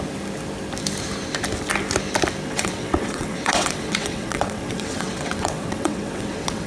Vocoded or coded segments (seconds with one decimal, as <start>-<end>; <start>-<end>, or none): 2.5-6.7